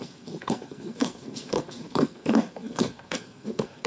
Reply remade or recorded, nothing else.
remade